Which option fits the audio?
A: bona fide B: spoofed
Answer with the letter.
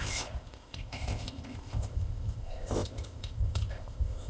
B